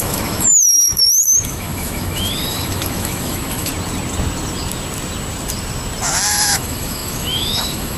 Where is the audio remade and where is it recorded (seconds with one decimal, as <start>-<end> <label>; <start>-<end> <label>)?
0.0-3.7 remade; 3.7-6.3 recorded; 6.3-8.0 remade